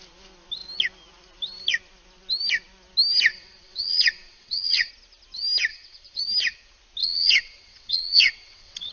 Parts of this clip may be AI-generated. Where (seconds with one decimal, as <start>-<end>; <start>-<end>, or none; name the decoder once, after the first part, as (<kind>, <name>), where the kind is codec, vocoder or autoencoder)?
3.3-4.9 (vocoder, WaveNeXt); 5.7-6.2; 7.0-8.9